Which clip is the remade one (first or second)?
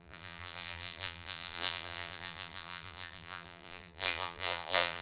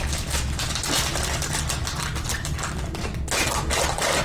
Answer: first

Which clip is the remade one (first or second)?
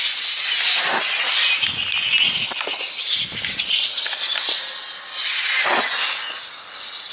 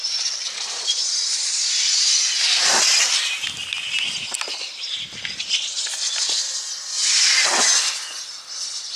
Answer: second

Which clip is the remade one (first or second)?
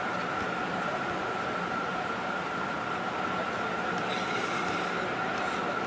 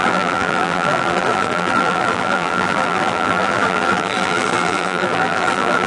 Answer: second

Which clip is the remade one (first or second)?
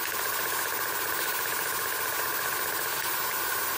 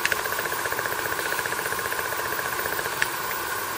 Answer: second